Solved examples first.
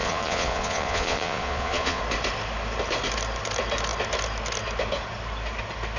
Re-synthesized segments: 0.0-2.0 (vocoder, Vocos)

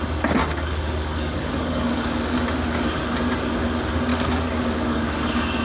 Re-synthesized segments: 0.4-3.0 (codec, DAC); 4.1-5.6